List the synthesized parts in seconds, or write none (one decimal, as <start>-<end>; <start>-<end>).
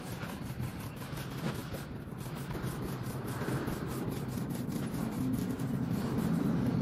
0.7-1.2